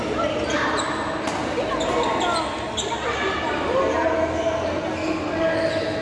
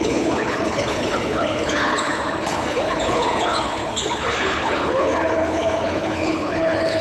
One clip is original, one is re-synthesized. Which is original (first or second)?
first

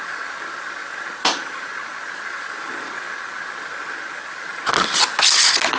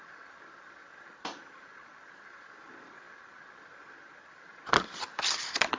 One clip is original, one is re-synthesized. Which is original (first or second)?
first